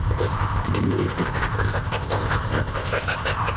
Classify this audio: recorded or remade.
remade